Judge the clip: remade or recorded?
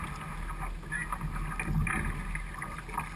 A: recorded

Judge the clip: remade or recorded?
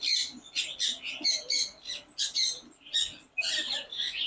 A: recorded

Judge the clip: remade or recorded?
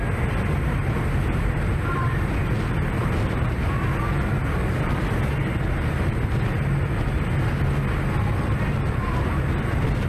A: recorded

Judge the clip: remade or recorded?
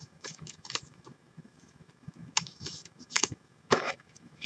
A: remade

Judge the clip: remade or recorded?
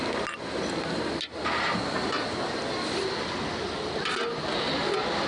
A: recorded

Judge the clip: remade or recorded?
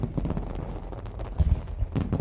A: recorded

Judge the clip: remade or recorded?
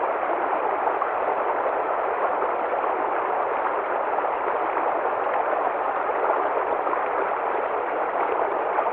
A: remade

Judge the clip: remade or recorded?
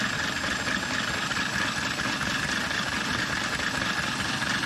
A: recorded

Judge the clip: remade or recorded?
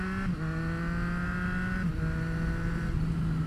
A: recorded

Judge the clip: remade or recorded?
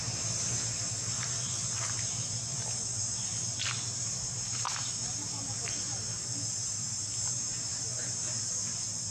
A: remade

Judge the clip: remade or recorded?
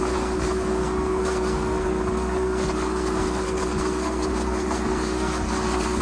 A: remade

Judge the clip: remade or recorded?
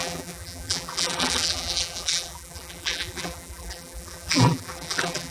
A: remade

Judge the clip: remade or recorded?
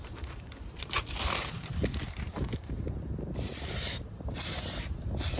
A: remade